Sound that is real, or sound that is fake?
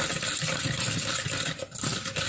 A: real